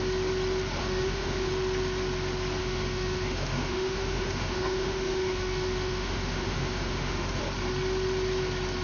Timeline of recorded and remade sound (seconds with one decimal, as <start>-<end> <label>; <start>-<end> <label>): 0.0-0.8 recorded; 0.8-1.5 remade; 1.5-2.6 recorded; 2.6-7.4 remade; 7.4-8.8 recorded